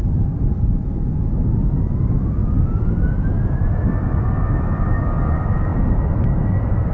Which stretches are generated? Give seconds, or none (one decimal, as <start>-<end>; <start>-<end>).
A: none

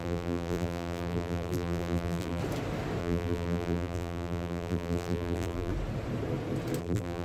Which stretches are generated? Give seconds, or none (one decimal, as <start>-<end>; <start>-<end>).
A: 0.0-2.4; 3.0-5.7; 6.8-7.2

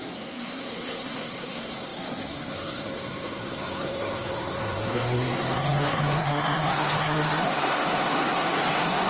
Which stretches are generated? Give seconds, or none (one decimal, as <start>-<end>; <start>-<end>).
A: 0.0-9.1

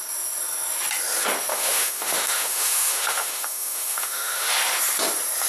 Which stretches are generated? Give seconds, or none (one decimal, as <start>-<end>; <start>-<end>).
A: 1.5-4.5